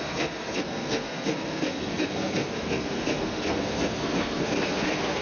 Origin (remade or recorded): remade